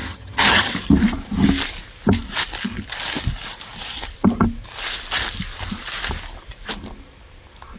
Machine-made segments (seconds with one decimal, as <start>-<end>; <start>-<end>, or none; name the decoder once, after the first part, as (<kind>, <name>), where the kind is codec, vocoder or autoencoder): 0.0-0.7 (vocoder, HiFi-GAN)

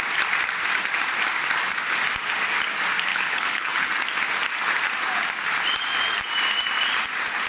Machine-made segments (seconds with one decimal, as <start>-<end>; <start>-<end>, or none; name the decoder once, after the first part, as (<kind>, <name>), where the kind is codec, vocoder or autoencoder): 3.1-3.9 (codec, HILCodec)

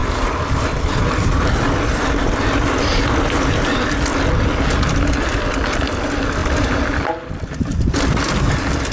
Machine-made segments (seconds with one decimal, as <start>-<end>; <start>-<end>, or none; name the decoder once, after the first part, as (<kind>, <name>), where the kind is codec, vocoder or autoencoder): 0.0-1.4 (vocoder, BigVGAN v2); 4.1-4.7

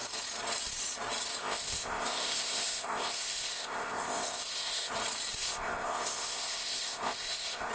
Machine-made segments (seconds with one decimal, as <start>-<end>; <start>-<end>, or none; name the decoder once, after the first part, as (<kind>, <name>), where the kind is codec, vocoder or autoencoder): 1.4-4.9 (codec, ZipCodec); 5.4-7.7

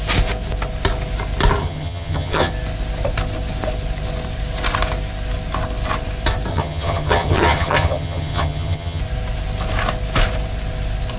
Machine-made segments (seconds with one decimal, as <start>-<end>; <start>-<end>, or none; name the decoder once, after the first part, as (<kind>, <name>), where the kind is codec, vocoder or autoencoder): 1.6-2.5 (vocoder, HiFi-GAN); 6.5-9.0

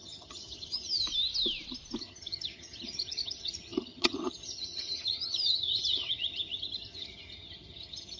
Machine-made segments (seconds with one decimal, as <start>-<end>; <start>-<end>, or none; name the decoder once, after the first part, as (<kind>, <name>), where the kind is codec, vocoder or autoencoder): 0.0-1.0 (vocoder, HiFi-GAN); 2.0-8.2

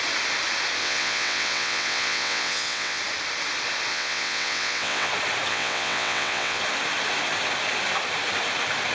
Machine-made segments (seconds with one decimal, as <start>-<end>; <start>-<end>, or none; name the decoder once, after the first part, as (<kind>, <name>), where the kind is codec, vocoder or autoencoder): 0.8-3.0 (vocoder, WaveNeXt); 3.9-5.1; 5.5-6.6